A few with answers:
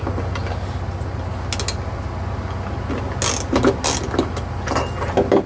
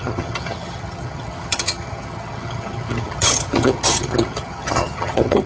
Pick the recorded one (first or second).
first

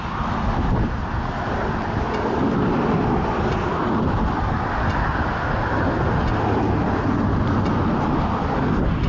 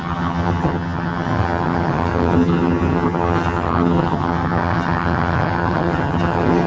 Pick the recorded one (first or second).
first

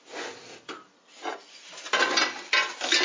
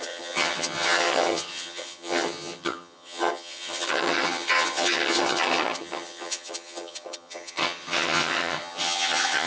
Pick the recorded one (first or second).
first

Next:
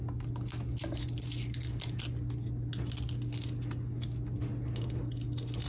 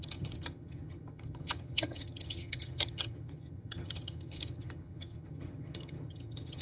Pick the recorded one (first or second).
first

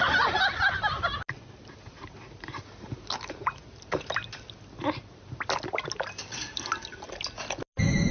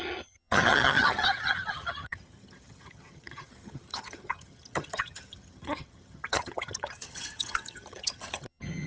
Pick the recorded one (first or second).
first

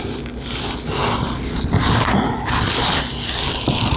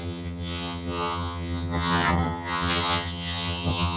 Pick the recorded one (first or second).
first